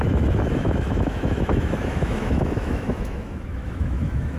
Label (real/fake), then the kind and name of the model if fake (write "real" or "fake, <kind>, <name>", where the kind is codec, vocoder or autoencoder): fake, autoencoder, DAC-VAE